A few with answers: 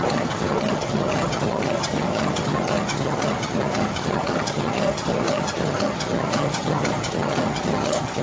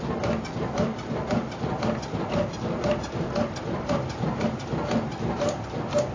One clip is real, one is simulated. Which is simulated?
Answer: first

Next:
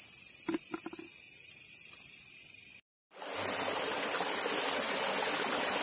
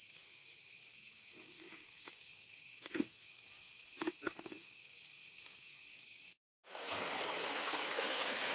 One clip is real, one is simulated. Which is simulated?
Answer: second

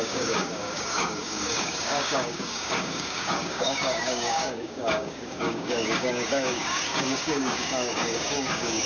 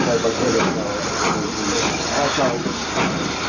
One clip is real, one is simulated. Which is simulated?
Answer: first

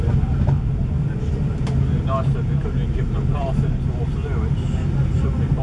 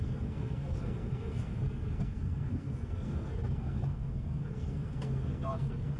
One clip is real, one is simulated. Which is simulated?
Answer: second